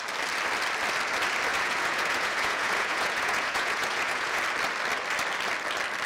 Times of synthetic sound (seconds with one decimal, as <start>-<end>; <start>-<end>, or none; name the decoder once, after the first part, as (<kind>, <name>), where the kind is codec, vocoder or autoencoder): 1.5-4.4 (vocoder, Vocos)

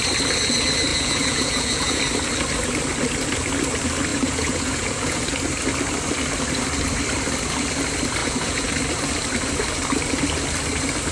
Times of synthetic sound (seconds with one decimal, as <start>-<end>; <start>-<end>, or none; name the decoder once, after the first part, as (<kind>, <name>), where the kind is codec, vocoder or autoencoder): 0.9-2.0 (vocoder, Vocos); 4.1-5.2; 8.2-8.7

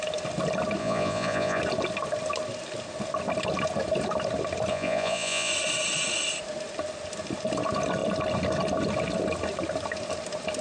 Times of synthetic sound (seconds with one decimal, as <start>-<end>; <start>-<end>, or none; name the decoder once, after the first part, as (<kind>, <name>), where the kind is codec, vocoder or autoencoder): 0.8-1.6 (vocoder, Vocos); 4.7-5.5

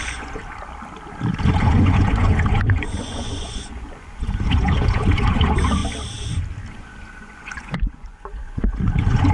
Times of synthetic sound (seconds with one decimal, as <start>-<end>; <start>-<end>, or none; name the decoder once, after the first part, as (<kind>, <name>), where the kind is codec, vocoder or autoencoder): 0.0-0.4 (vocoder, Vocos); 1.4-5.8; 6.7-9.3

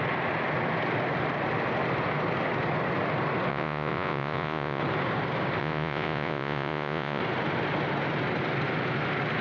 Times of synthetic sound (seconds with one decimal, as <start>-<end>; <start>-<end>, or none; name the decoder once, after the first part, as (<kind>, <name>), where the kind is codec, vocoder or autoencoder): 3.5-4.8 (vocoder, Vocos); 5.6-7.2